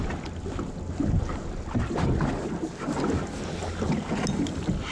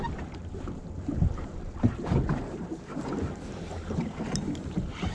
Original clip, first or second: first